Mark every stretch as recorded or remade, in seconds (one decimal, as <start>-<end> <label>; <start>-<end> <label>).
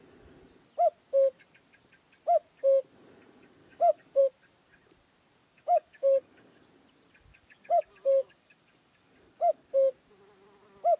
0.0-3.6 recorded; 3.6-4.2 remade; 4.2-5.4 recorded; 5.4-6.6 remade; 6.6-7.3 recorded; 7.3-9.7 remade; 9.7-11.0 recorded